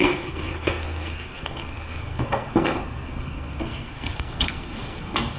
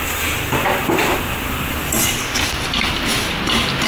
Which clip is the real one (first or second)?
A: second